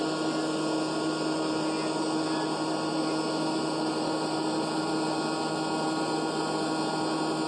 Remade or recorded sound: recorded